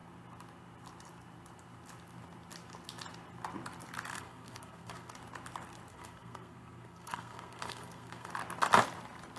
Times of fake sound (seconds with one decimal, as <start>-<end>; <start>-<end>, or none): 4.1-5.1; 5.9-8.3